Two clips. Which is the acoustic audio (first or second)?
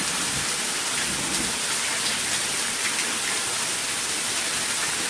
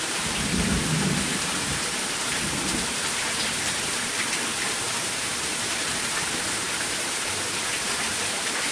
first